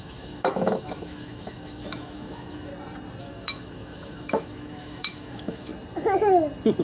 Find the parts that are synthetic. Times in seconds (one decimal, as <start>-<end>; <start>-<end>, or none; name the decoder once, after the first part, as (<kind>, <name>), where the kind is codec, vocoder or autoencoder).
0.0-2.7 (autoencoder, DAC-VAE); 3.2-5.7